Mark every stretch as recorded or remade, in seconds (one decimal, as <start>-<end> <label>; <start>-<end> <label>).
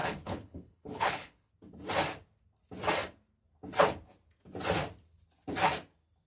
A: 0.0-1.5 remade; 1.5-6.3 recorded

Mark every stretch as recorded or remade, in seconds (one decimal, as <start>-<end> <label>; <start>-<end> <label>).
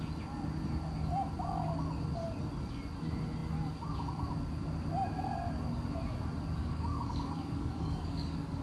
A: 0.0-6.6 recorded; 6.6-8.6 remade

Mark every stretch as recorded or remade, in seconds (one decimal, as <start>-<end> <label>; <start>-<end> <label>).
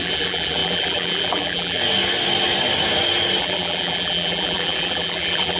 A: 0.0-1.8 remade; 1.8-3.4 recorded; 3.4-5.6 remade